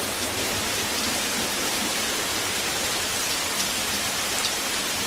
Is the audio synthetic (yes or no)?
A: yes